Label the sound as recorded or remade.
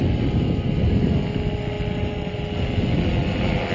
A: recorded